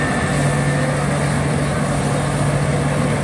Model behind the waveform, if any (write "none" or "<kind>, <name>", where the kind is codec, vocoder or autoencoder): none